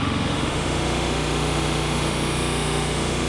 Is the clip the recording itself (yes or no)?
no